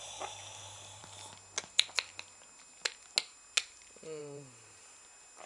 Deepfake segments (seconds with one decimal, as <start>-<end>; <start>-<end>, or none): 4.2-4.8